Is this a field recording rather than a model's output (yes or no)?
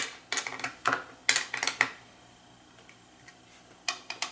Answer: yes